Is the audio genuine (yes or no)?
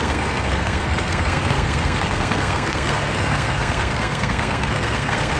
no